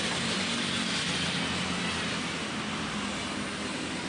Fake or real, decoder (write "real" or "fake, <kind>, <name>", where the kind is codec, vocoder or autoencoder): real